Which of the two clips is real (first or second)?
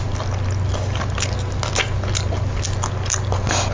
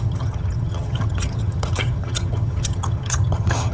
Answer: first